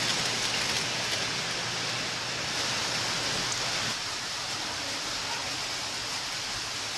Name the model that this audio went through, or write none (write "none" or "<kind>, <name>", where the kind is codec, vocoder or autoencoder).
none